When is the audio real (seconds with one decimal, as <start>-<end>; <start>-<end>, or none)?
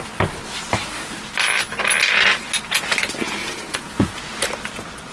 0.0-3.4; 4.2-5.1